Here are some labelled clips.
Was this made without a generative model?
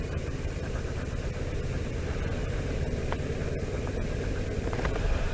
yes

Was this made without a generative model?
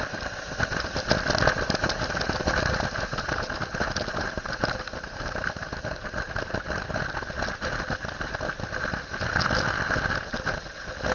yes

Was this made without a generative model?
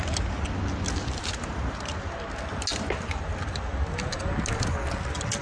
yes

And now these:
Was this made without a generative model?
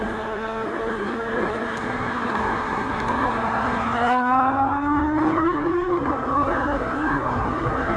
no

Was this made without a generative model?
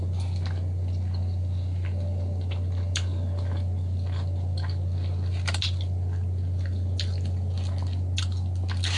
yes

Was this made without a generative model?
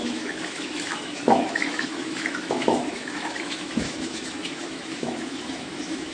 no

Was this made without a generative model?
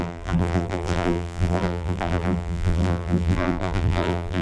no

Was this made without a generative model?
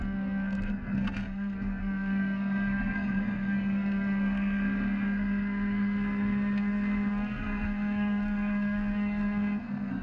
no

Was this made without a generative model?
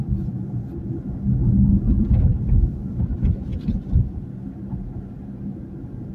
yes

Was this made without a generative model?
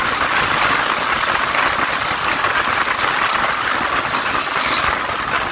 yes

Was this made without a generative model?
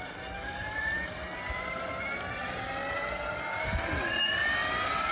yes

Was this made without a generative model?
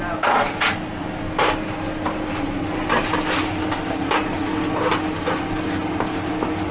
yes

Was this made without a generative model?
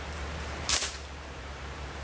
no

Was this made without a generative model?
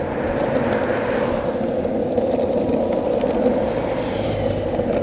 yes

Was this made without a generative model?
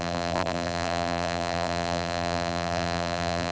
no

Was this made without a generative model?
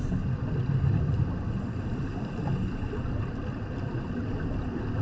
yes